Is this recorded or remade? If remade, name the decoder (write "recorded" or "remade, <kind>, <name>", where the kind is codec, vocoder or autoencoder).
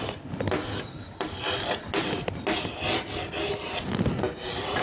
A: recorded